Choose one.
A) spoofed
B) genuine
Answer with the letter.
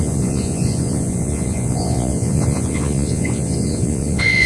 A